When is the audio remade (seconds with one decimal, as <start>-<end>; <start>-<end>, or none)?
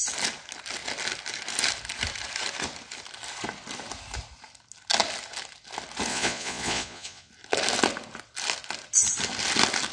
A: 6.1-7.3